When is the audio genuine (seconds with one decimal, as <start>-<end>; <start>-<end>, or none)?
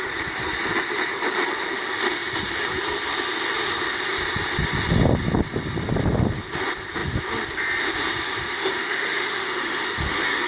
0.0-8.6